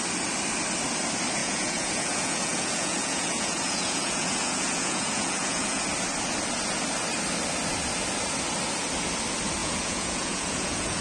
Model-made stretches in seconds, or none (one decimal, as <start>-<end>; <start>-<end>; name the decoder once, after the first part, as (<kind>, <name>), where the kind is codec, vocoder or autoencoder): 1.4-5.8 (vocoder, Vocos); 9.6-11.0